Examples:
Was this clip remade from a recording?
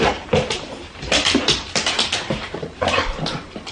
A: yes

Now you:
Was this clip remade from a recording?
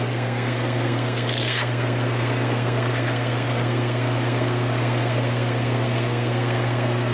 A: yes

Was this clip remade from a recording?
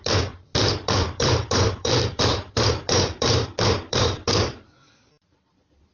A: yes